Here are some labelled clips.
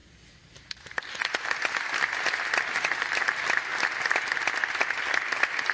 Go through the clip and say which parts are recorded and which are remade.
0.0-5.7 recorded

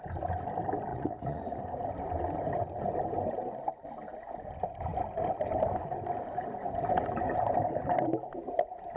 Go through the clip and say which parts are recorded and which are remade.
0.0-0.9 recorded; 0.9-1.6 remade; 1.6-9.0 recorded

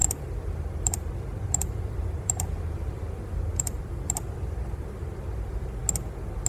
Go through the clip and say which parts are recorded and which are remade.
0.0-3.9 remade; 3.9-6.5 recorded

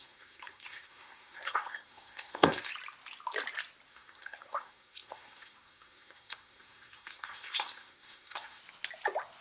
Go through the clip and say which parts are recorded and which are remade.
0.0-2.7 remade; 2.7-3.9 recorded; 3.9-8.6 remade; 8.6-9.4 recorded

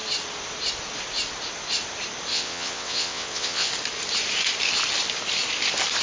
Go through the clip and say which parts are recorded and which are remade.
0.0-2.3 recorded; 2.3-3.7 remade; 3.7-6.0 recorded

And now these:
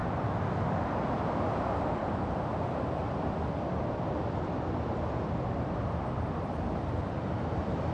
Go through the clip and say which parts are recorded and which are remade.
0.0-7.9 remade

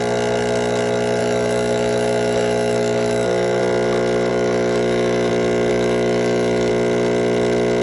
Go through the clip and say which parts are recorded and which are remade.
0.0-1.2 recorded; 1.2-3.6 remade; 3.6-4.3 recorded; 4.3-5.3 remade; 5.3-5.7 recorded; 5.7-6.7 remade; 6.7-7.8 recorded